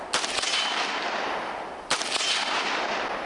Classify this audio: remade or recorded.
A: recorded